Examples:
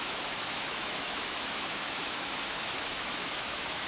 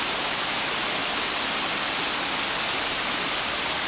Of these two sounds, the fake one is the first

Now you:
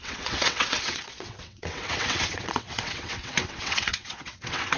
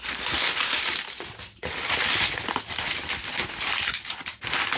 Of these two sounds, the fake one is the first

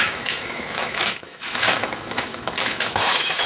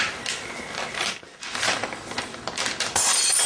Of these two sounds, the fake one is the first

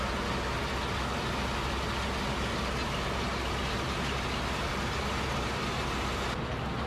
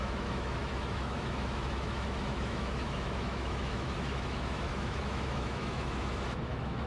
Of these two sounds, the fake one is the second